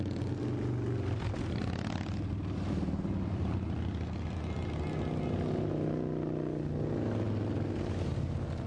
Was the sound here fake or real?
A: real